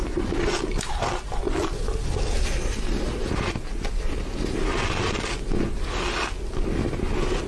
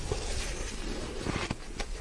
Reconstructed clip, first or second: second